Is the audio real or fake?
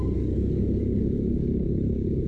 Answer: fake